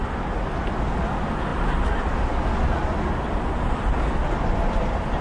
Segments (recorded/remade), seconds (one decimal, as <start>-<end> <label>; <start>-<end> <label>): 0.0-5.2 recorded